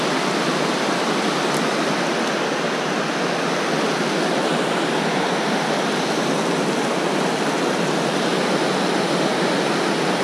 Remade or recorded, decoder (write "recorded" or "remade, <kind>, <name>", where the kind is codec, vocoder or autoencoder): recorded